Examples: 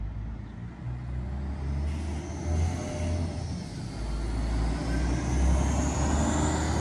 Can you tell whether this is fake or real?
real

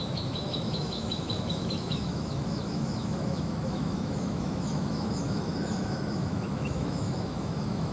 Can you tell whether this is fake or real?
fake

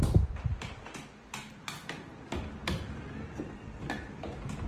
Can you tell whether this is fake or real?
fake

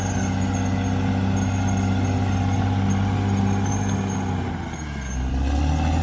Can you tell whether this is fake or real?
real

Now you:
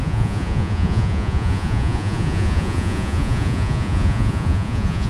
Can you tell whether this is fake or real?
fake